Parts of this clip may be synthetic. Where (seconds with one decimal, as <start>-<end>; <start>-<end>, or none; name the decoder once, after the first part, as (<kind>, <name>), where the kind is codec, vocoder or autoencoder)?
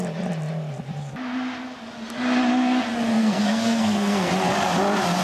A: 3.1-4.3 (codec, SNAC)